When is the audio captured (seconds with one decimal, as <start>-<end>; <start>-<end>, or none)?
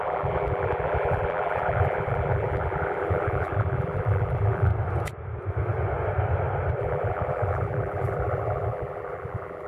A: 4.7-6.8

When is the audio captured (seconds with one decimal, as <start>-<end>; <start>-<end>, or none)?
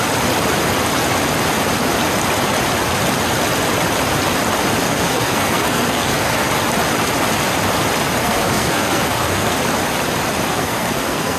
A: 0.0-4.8; 6.5-8.2; 9.6-10.5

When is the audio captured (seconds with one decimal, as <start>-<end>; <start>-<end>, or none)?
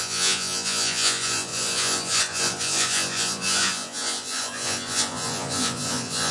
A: none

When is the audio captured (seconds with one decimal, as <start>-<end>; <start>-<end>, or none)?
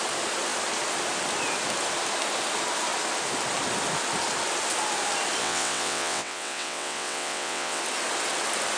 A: 0.0-5.4; 7.8-8.8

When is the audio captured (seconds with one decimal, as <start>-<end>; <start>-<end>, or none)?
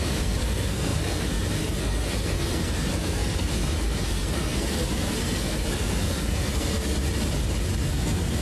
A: 7.0-7.9